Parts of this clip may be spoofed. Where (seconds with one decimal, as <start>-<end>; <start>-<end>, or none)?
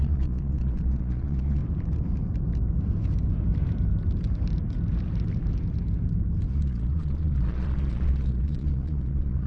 0.0-1.6; 6.5-9.5